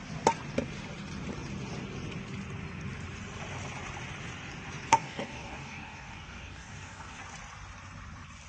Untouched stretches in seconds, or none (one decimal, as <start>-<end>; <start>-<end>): 0.0-4.9; 7.2-8.5